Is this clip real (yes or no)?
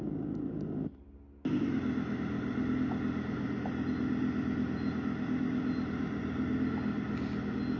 yes